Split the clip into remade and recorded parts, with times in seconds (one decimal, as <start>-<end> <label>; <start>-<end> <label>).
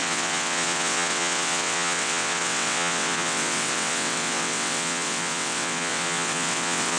0.0-7.0 remade